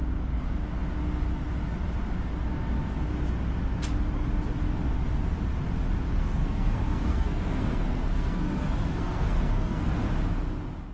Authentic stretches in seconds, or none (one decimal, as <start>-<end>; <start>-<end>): 0.0-6.1; 10.0-10.9